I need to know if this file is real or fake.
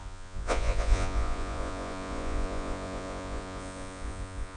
fake